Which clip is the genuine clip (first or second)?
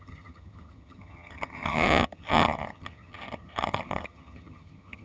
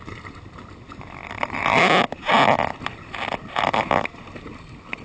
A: second